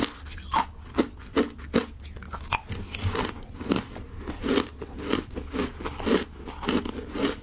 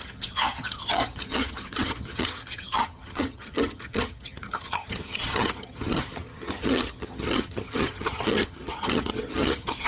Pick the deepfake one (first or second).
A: second